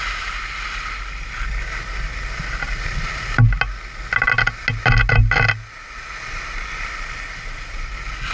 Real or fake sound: real